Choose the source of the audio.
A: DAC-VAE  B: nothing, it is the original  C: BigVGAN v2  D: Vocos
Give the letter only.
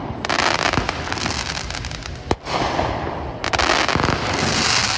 B